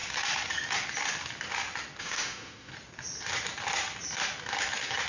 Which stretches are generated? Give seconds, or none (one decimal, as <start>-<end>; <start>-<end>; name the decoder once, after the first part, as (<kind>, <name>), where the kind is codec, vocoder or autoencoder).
2.0-2.7 (autoencoder, DAC-VAE)